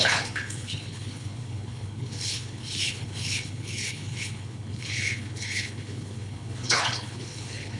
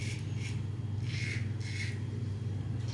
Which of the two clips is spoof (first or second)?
first